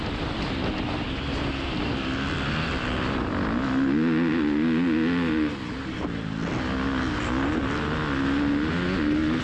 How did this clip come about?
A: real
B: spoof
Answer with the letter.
A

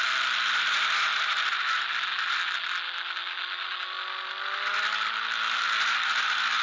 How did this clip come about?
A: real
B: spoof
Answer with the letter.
A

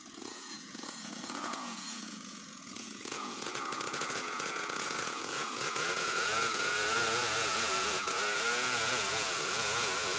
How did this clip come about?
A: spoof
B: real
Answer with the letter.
A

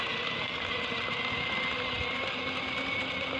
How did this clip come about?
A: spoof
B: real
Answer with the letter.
B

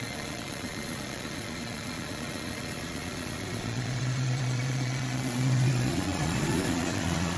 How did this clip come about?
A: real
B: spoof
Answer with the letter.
B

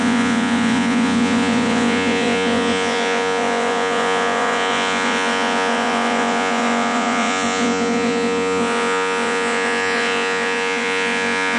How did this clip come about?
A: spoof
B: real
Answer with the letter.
A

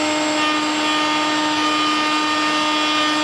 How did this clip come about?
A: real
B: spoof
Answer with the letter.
A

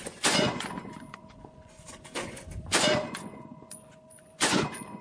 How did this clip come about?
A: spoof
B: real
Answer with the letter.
A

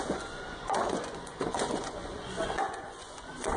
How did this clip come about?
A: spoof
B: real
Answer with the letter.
A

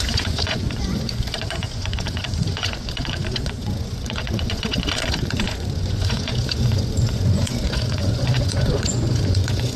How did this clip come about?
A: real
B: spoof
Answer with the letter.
B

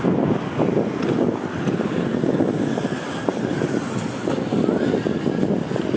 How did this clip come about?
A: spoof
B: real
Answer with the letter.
B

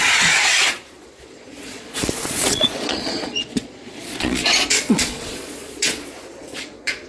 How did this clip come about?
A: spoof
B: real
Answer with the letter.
A